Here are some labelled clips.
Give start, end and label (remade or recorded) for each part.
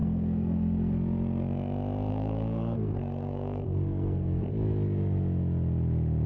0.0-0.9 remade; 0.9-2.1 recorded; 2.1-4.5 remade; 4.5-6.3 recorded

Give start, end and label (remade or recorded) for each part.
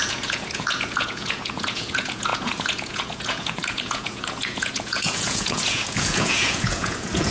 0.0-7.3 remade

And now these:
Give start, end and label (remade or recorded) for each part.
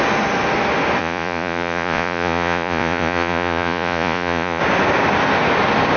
0.0-1.0 recorded; 1.0-4.6 remade; 4.6-6.0 recorded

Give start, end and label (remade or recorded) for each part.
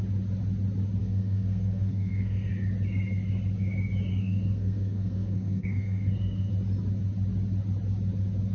0.0-1.0 recorded; 1.0-2.5 remade; 2.5-4.1 recorded; 4.1-6.5 remade; 6.5-8.5 recorded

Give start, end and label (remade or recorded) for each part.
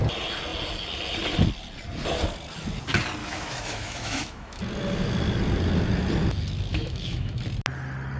0.0-3.2 recorded; 3.2-4.6 remade; 4.6-6.7 recorded; 6.7-7.4 remade; 7.4-8.2 recorded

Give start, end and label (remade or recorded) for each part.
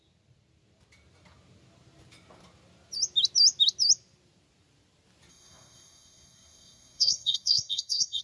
0.0-5.3 recorded; 5.3-8.2 remade